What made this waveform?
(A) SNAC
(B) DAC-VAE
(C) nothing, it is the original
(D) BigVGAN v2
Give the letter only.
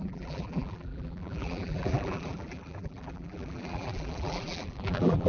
D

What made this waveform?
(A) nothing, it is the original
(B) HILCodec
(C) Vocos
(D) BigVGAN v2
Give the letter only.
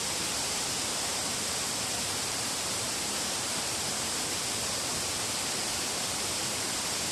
D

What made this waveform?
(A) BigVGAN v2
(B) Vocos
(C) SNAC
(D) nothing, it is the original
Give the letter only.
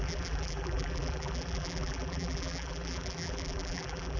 A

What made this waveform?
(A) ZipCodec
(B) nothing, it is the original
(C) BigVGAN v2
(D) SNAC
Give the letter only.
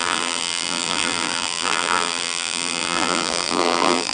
C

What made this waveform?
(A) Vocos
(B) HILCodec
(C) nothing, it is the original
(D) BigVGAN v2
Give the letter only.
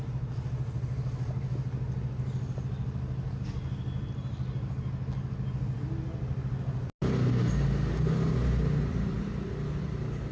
C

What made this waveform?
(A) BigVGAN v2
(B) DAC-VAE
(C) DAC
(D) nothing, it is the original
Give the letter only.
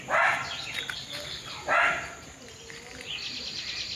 D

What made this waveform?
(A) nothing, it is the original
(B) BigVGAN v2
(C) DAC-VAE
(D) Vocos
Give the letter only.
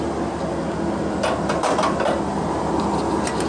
A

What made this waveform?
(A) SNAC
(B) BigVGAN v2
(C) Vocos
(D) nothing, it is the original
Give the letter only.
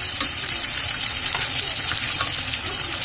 B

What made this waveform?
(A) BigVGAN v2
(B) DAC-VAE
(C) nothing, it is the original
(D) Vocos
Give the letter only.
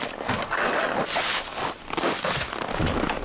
C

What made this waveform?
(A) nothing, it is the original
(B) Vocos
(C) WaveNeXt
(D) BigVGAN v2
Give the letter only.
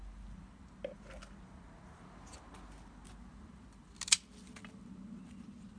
A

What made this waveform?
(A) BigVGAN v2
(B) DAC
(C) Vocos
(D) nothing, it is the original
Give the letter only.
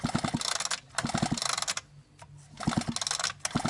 D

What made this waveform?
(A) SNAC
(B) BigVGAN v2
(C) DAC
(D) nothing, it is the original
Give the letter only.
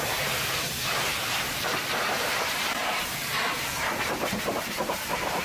B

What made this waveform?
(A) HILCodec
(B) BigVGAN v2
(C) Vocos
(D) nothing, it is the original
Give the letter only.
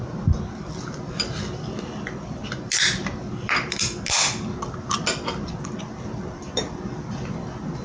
B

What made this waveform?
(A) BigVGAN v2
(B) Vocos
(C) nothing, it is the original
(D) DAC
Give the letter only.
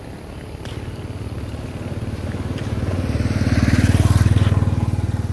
C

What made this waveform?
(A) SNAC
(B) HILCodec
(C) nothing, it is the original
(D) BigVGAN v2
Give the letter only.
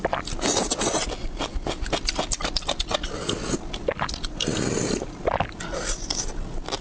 C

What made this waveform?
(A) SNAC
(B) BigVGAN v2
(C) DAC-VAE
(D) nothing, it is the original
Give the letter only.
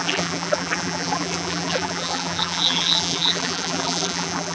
B